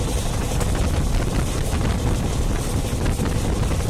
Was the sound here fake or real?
real